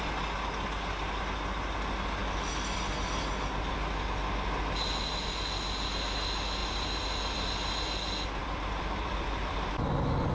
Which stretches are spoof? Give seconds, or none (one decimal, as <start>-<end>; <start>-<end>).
6.6-7.5; 8.4-9.7